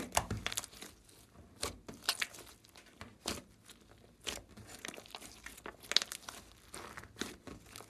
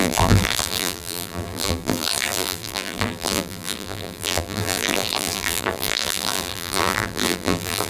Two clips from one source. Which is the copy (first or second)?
second